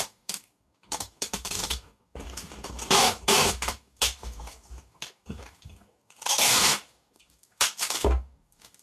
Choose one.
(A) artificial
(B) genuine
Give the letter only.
A